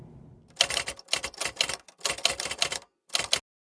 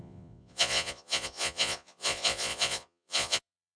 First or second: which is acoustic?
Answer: first